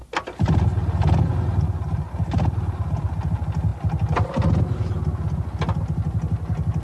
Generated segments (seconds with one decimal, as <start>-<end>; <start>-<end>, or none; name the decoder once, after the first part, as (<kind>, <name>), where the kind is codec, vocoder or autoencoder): none